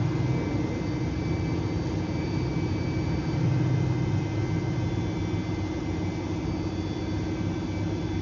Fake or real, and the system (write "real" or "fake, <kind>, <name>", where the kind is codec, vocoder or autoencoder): real